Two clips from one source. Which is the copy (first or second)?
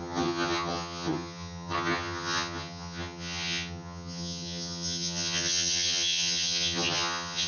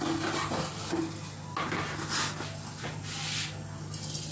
first